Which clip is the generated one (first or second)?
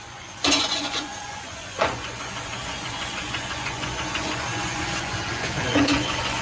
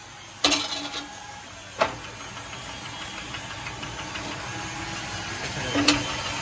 first